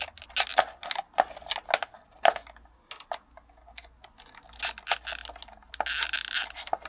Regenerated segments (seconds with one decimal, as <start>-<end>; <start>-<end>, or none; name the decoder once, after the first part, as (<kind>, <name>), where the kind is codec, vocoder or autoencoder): none